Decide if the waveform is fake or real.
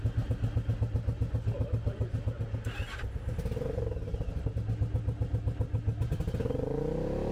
real